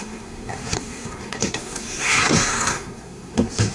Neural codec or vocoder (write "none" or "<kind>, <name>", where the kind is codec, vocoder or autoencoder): codec, SNAC